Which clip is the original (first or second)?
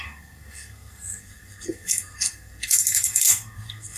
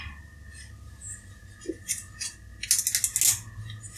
second